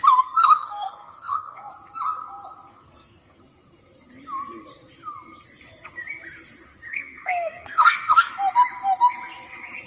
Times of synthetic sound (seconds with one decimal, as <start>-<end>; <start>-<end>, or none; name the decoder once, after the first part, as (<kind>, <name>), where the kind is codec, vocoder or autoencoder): 0.4-1.7 (codec, SNAC); 2.7-3.4; 6.9-8.3